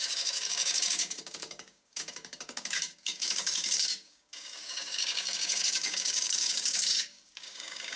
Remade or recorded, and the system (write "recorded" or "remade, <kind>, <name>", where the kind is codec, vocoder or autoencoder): remade, codec, DAC